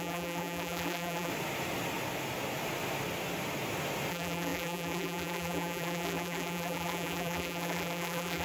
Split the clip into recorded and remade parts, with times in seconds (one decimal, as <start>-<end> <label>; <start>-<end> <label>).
0.0-1.3 remade; 1.3-4.1 recorded; 4.1-8.4 remade